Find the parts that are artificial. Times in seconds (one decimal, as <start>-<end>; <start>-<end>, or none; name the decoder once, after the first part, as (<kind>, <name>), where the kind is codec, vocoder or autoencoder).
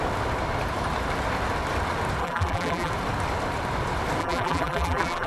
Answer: 2.2-2.9 (vocoder, BigVGAN v2); 4.2-5.3